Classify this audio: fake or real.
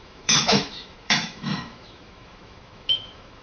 fake